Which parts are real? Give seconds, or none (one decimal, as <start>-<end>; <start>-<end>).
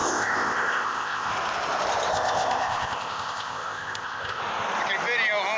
1.3-2.1; 4.4-5.6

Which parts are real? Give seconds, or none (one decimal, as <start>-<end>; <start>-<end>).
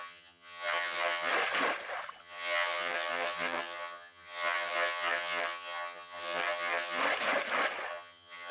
1.3-2.2; 7.0-7.9